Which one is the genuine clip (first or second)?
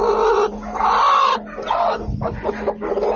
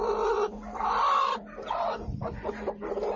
first